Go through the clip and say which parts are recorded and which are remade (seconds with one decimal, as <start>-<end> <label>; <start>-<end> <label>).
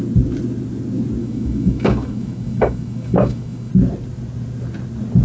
0.0-1.2 recorded; 1.2-3.7 remade; 3.7-5.2 recorded